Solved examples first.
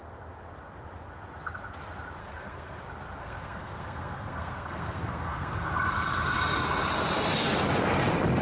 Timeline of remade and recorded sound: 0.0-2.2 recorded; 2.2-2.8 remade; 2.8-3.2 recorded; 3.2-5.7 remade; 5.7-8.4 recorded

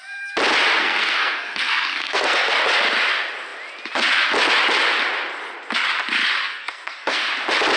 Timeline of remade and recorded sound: 0.0-0.8 recorded; 0.8-2.5 remade; 2.5-6.4 recorded; 6.4-7.3 remade; 7.3-7.8 recorded